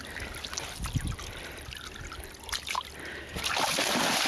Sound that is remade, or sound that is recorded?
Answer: recorded